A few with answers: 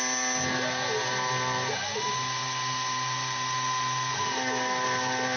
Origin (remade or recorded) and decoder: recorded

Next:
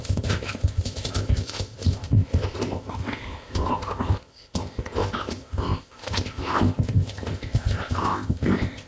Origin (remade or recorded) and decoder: remade, codec, ZipCodec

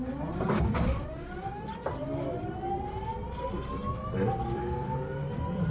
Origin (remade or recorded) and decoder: recorded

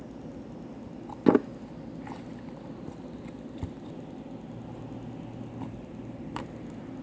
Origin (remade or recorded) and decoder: recorded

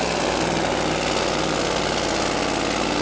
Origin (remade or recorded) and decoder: recorded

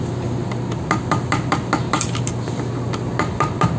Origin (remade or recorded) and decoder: recorded